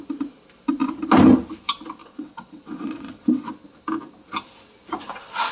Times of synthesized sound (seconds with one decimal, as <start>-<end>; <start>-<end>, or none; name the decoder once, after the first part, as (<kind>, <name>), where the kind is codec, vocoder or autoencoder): 2.0-3.5 (vocoder, WaveNeXt)